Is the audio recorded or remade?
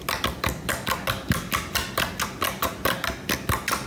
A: recorded